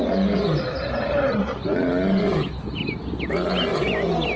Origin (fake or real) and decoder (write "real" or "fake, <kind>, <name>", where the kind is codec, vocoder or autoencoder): real